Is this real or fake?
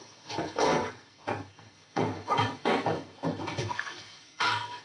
fake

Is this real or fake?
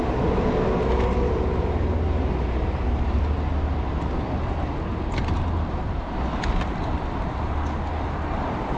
real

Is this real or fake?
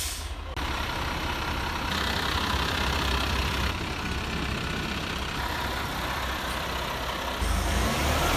real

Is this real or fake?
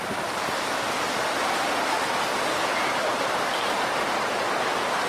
fake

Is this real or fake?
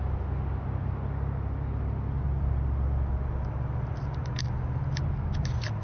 real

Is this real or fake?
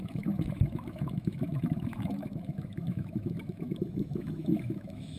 fake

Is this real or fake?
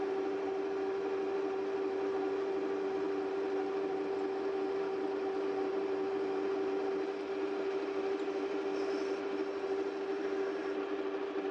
real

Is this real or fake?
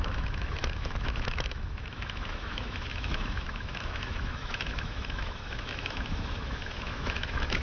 fake